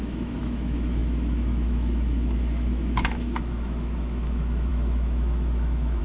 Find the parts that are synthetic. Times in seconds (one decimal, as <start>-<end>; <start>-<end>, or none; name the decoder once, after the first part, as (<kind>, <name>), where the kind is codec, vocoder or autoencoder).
0.0-6.0 (autoencoder, DAC-VAE)